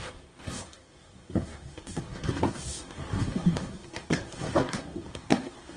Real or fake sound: fake